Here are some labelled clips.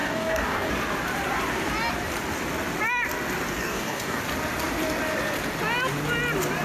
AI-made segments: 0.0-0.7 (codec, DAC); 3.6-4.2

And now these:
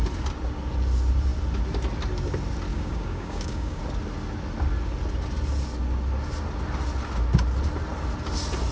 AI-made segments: 2.7-3.8 (codec, DAC)

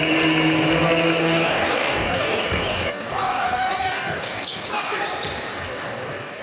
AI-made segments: 1.2-5.0 (codec, DAC); 5.5-6.4